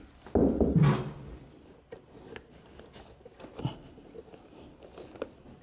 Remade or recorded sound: recorded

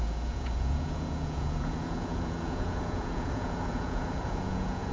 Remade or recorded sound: remade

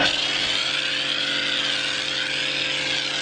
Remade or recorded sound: recorded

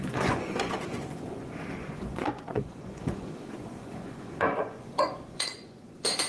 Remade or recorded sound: remade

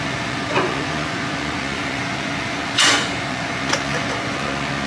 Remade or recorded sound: remade